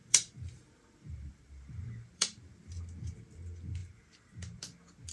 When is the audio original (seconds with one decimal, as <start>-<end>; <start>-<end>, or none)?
2.6-3.8; 4.6-5.1

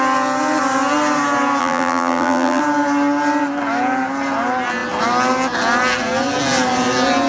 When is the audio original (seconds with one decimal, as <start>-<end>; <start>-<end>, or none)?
0.0-1.6; 2.6-7.3

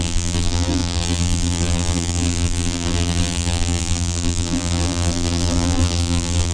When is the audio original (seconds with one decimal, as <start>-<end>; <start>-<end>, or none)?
none